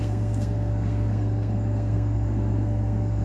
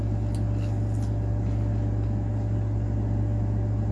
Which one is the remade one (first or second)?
first